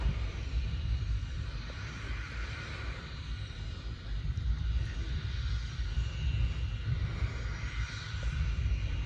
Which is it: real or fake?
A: fake